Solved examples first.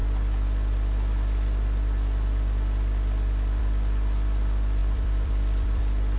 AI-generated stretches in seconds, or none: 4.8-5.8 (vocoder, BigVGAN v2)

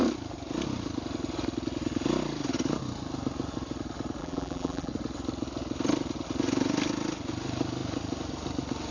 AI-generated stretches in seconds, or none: 4.2-4.9 (vocoder, BigVGAN v2)

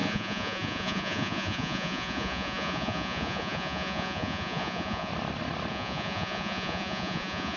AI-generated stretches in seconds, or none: 0.0-5.1 (vocoder, Vocos); 5.7-7.6

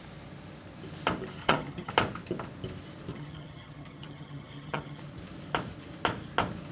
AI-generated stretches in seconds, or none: 1.4-1.9 (vocoder, HiFi-GAN); 3.1-5.0

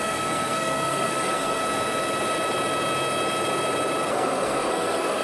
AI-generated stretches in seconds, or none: 0.0-1.6 (codec, SNAC); 4.1-5.2

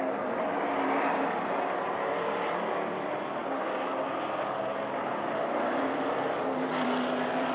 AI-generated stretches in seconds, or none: 0.0-3.4 (vocoder, BigVGAN v2); 5.6-7.5

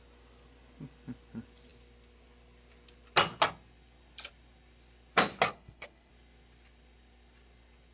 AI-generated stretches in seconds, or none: 5.5-6.1 (codec, HILCodec)

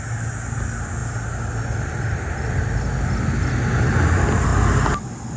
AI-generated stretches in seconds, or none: none